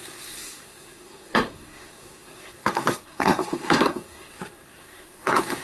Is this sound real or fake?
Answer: fake